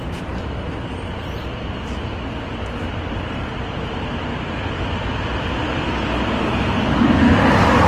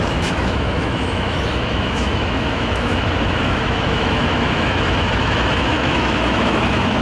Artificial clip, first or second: second